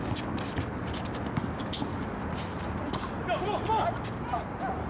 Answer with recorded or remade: recorded